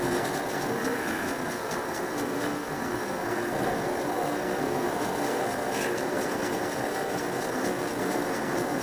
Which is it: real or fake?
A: fake